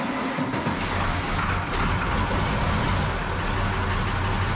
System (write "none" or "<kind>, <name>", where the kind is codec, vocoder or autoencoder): none